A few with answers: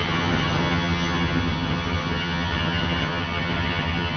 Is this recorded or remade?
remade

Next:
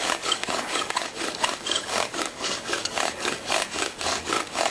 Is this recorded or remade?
remade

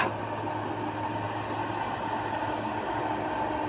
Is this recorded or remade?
recorded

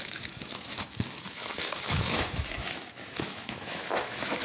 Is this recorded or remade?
remade